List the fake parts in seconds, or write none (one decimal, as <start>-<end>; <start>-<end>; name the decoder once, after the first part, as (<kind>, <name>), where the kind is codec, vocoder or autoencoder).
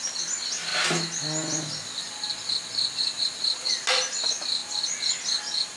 none